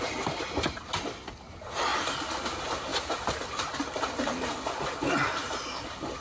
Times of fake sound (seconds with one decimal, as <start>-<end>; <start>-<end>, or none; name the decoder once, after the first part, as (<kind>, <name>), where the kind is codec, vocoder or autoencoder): 2.9-4.0 (vocoder, BigVGAN v2)